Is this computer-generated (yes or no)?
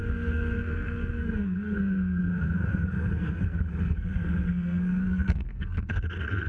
yes